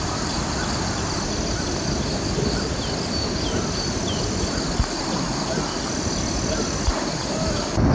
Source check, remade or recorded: recorded